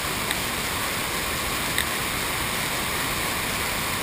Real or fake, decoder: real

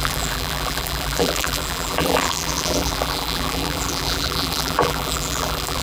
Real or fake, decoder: fake, vocoder, BigVGAN v2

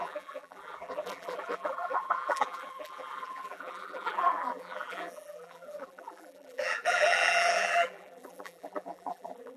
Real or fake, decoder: fake, vocoder, BigVGAN v2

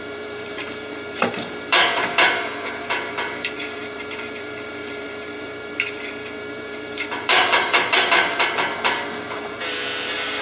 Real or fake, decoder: fake, vocoder, BigVGAN v2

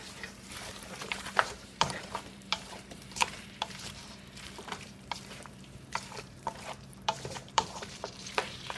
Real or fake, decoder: fake, vocoder, BigVGAN v2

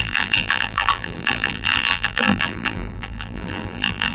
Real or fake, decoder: fake, vocoder, BigVGAN v2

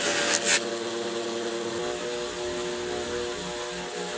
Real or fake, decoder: real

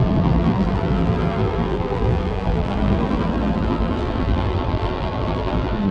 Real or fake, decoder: fake, vocoder, BigVGAN v2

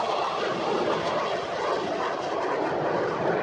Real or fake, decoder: real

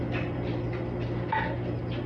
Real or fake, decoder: real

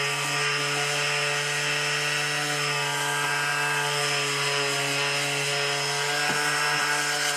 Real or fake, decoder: real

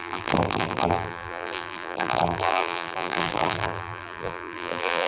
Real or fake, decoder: fake, vocoder, BigVGAN v2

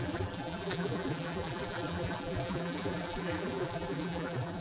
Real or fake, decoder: fake, vocoder, BigVGAN v2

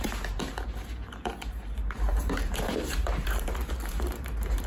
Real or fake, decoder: fake, vocoder, BigVGAN v2